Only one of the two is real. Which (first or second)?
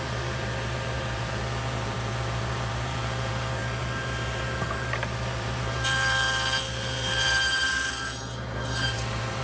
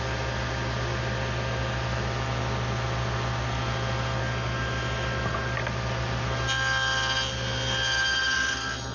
second